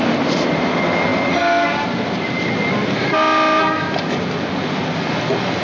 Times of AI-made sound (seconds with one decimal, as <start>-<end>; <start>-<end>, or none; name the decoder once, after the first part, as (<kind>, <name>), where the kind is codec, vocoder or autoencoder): none